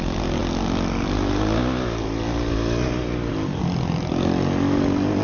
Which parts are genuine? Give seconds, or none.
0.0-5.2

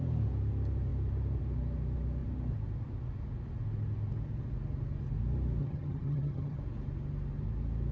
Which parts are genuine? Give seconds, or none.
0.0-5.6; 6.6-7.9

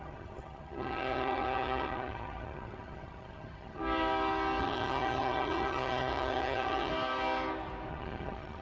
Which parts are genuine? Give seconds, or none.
3.8-4.6; 6.9-7.9

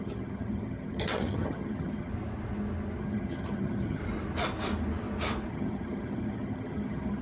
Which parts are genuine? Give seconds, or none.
2.1-3.0; 4.0-5.5